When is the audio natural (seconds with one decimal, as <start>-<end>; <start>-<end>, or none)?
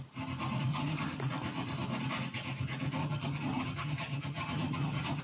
0.0-0.7; 1.2-3.0